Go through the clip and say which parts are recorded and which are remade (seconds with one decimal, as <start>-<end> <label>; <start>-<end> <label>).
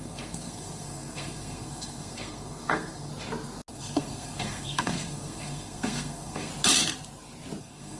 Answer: 0.0-3.1 remade; 3.1-3.7 recorded; 3.7-6.5 remade; 6.5-7.6 recorded; 7.6-8.0 remade